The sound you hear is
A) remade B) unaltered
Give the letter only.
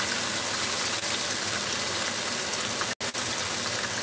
B